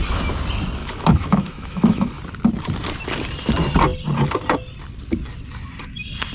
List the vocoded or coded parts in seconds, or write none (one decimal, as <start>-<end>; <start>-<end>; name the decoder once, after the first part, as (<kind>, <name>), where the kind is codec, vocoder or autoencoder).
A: 0.8-2.1 (autoencoder, DAC-VAE)